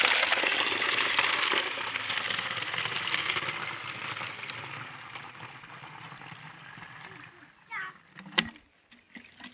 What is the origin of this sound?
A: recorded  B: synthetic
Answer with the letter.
A